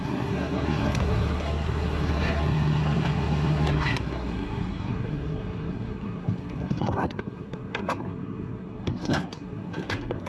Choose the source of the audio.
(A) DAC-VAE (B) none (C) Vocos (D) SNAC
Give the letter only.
D